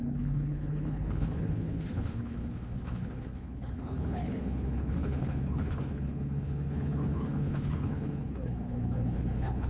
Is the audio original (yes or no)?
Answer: no